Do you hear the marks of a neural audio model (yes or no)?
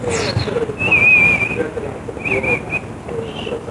no